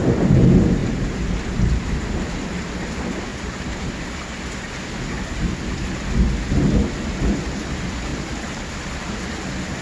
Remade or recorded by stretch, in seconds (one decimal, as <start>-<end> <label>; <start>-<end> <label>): 0.0-0.8 recorded; 0.8-2.7 remade; 2.7-3.3 recorded; 3.3-3.8 remade; 3.8-8.1 recorded; 8.1-8.7 remade; 8.7-9.8 recorded